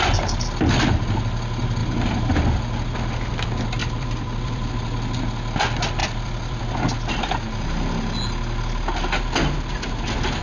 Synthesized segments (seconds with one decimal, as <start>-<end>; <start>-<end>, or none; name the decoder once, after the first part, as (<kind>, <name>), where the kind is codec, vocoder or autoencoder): 1.8-2.4 (vocoder, BigVGAN v2); 3.8-4.7; 6.0-7.3